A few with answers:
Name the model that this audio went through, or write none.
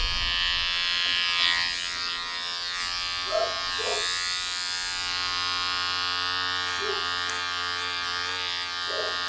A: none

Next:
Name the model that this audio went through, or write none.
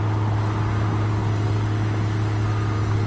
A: none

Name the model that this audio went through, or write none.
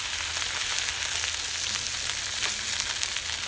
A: none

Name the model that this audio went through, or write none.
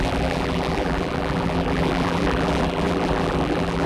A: vocoder, BigVGAN v2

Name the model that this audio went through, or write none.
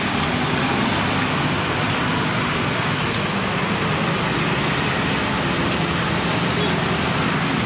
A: none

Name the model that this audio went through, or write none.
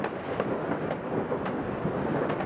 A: none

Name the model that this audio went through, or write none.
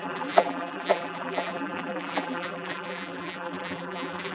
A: vocoder, BigVGAN v2